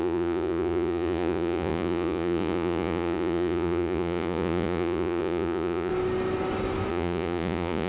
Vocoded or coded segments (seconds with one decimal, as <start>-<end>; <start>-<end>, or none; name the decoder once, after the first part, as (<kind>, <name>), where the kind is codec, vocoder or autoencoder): 0.0-5.9 (vocoder, Vocos); 6.9-7.9